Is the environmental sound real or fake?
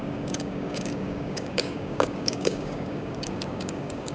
fake